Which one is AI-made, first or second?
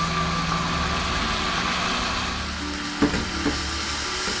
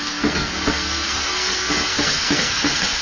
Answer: second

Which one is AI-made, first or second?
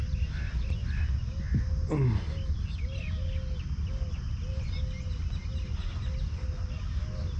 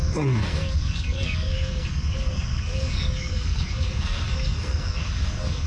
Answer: second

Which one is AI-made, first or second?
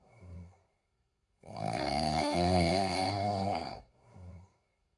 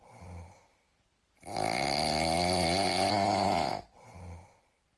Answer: first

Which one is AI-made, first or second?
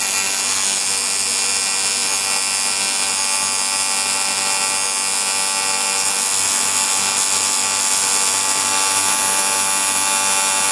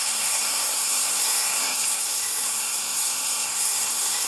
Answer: second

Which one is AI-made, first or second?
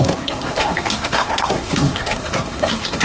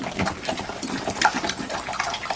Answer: first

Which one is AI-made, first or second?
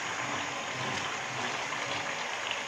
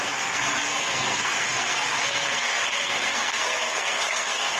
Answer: second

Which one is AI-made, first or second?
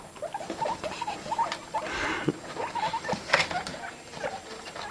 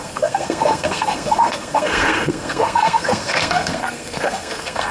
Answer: second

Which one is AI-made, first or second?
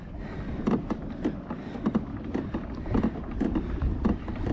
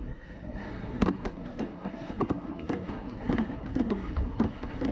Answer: second